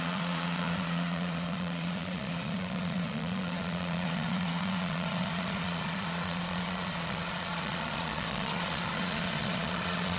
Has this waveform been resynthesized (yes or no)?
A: yes